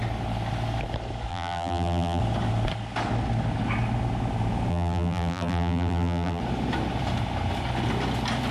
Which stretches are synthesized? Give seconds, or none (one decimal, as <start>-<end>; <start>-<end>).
1.3-2.2; 4.7-6.4